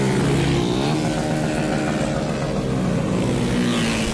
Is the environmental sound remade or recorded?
recorded